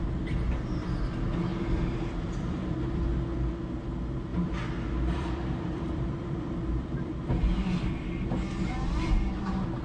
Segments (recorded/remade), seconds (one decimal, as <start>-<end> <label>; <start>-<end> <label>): 0.0-1.5 recorded; 1.5-3.1 remade; 3.1-4.3 recorded; 4.3-7.3 remade; 7.3-9.8 recorded